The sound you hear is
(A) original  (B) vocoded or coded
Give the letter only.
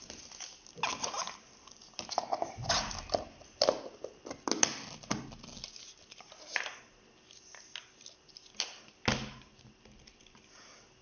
A